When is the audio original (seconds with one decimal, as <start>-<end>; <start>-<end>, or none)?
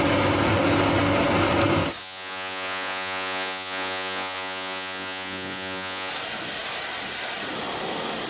0.0-2.0; 6.1-8.3